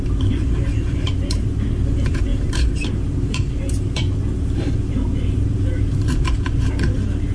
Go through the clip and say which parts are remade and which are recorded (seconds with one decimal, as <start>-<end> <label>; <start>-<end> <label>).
0.0-7.3 remade